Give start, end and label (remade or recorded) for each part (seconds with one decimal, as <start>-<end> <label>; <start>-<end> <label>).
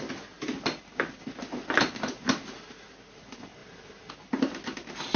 0.0-5.2 recorded